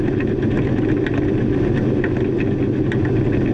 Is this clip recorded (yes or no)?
yes